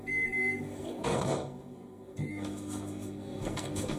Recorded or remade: remade